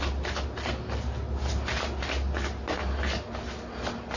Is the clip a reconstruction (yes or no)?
no